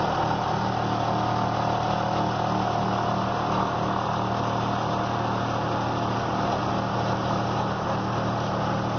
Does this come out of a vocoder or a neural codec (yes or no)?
no